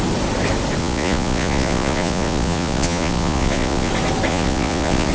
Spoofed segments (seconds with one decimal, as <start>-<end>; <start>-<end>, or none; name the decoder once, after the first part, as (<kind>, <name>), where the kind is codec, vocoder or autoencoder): 0.8-3.9 (vocoder, Vocos); 4.3-5.1